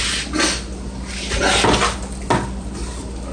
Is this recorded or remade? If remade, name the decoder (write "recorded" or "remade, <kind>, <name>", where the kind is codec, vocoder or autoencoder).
recorded